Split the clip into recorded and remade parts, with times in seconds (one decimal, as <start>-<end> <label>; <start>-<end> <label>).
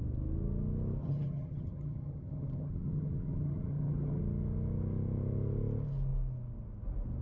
0.0-1.0 recorded; 1.0-4.2 remade; 4.2-7.2 recorded